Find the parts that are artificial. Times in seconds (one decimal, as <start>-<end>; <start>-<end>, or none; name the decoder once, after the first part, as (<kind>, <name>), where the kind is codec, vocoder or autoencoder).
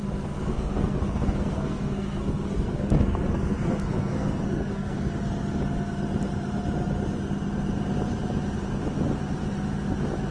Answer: 0.0-5.1 (codec, SNAC)